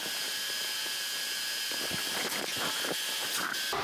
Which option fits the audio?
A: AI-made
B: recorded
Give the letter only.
B